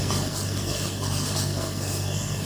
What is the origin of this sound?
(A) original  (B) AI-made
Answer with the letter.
B